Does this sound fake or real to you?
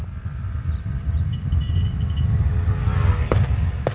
real